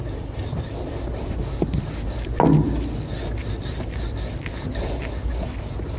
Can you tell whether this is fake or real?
real